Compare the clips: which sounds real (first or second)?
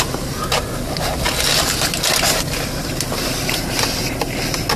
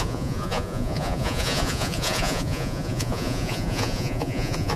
first